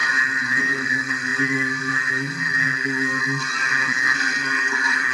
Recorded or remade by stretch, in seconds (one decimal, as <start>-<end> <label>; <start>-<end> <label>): 0.0-0.6 recorded; 0.6-3.2 remade; 3.2-3.7 recorded; 3.7-5.1 remade